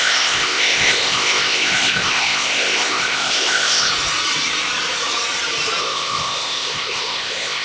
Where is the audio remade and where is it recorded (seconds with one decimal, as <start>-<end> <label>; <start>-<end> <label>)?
0.0-3.9 remade; 3.9-5.8 recorded; 5.8-7.6 remade